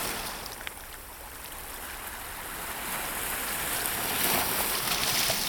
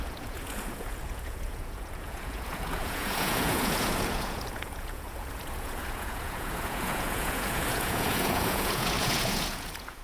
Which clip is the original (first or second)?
first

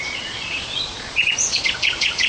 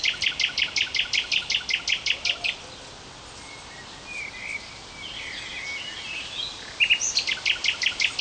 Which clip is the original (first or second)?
second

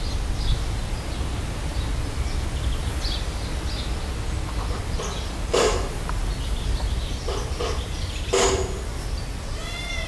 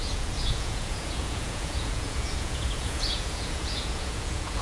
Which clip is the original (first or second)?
first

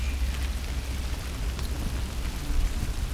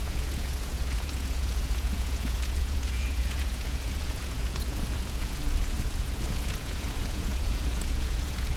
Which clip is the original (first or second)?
first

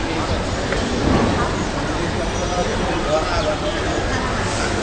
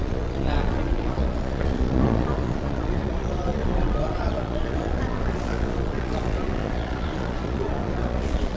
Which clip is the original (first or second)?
first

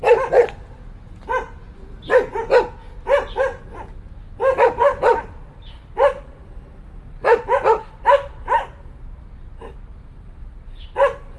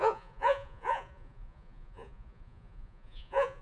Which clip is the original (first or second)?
first